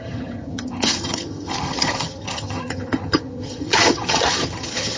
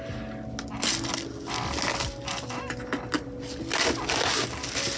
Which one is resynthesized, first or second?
first